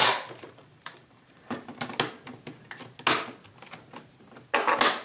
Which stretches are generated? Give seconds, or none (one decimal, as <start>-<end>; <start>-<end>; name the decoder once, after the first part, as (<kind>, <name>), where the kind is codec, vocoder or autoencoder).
0.0-1.4 (vocoder, BigVGAN v2)